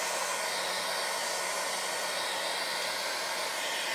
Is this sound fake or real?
real